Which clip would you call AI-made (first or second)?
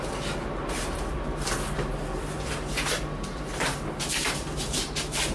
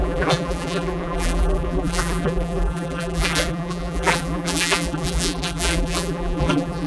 second